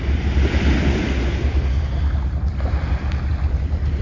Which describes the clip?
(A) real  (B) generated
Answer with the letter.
A